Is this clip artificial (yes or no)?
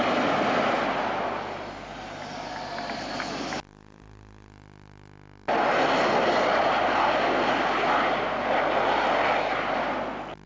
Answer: no